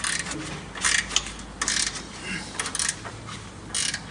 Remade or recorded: recorded